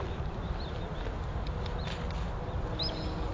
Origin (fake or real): real